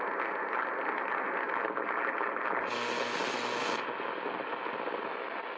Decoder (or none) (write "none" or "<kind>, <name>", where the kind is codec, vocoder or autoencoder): none